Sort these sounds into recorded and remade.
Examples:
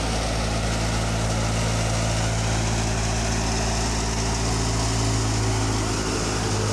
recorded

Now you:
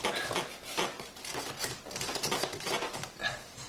recorded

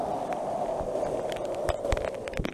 recorded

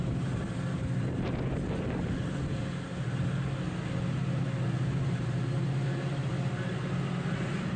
recorded